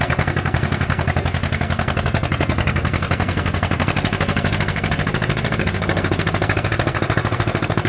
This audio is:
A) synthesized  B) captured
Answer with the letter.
A